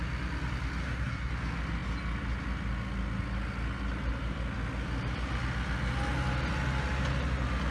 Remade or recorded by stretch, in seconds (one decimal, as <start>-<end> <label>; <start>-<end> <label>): 0.0-0.8 recorded; 0.8-1.3 remade; 1.3-7.7 recorded

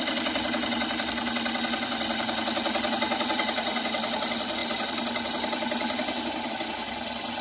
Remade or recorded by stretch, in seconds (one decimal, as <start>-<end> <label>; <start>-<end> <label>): 0.0-7.4 recorded

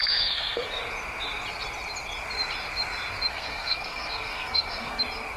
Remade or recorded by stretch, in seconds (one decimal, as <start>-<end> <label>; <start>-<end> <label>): 0.0-0.8 remade; 0.8-3.3 recorded; 3.3-5.0 remade; 5.0-5.4 recorded

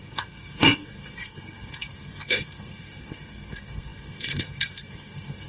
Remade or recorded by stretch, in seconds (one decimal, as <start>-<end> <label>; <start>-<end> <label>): 0.0-5.5 remade

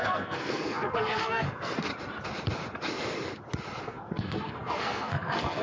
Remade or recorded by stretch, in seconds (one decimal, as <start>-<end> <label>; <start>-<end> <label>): 0.0-1.9 remade; 1.9-3.8 recorded; 3.8-5.6 remade